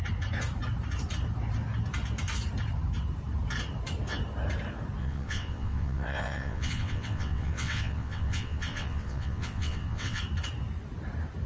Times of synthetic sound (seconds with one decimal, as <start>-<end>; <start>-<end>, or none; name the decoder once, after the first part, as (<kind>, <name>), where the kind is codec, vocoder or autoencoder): 5.0-10.2 (vocoder, WaveNeXt)